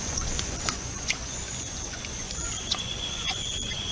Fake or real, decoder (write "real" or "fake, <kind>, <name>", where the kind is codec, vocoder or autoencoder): fake, vocoder, Vocos